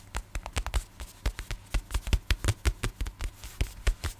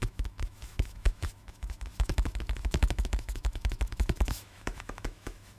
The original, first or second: first